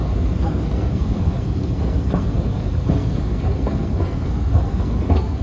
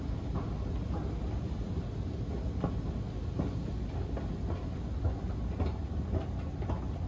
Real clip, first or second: second